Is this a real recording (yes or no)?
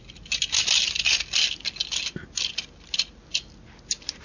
yes